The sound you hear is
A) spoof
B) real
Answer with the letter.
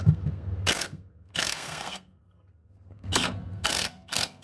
A